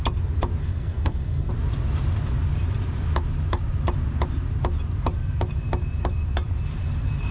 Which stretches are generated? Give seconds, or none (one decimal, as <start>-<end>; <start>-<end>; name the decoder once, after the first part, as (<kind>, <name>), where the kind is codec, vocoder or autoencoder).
0.6-1.5 (codec, SNAC)